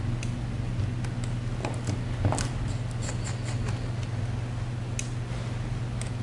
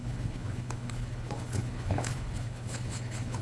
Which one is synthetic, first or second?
second